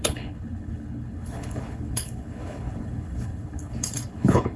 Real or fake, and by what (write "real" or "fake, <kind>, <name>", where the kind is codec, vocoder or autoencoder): fake, codec, HILCodec